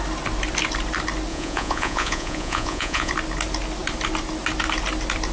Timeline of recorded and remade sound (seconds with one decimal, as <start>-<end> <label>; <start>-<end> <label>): 0.0-1.3 recorded; 1.3-3.1 remade; 3.1-5.3 recorded

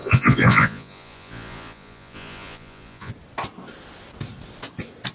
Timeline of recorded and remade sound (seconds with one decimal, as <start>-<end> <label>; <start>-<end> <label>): 0.0-3.1 remade; 3.1-5.1 recorded

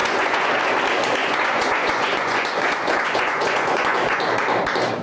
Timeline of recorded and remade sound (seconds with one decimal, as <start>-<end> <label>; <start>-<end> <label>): 0.0-0.5 remade; 0.5-1.2 recorded; 1.2-4.2 remade; 4.2-5.0 recorded

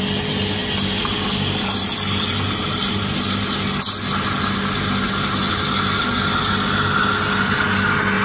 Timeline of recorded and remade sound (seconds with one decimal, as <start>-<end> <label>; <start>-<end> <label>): 0.0-8.2 recorded

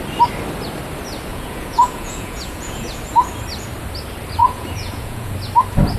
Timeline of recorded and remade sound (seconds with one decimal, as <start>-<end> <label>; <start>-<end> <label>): 0.0-1.3 recorded; 1.3-3.0 remade; 3.0-4.4 recorded; 4.4-5.3 remade; 5.3-6.0 recorded

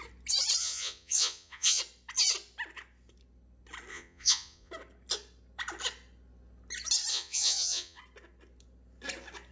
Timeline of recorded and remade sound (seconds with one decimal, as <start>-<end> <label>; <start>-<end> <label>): 0.0-0.6 recorded; 0.6-1.8 remade; 1.8-3.9 recorded; 3.9-4.7 remade; 4.7-7.1 recorded; 7.1-8.0 remade; 8.0-9.5 recorded